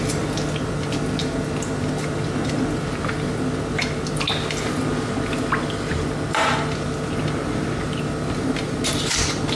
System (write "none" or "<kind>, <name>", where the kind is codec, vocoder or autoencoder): none